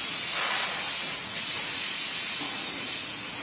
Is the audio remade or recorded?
remade